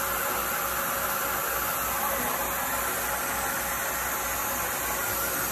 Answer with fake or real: real